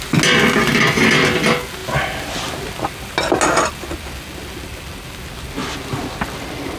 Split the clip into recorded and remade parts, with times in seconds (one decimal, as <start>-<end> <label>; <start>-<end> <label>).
0.0-6.8 recorded